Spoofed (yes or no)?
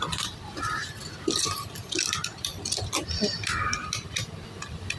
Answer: no